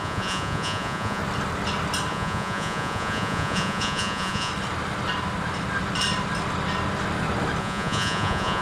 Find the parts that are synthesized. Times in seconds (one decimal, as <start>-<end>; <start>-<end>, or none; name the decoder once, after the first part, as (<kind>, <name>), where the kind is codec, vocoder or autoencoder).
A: 0.0-1.2 (vocoder, Vocos); 2.1-4.5; 7.6-8.6